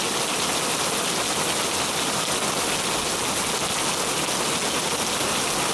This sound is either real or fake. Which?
real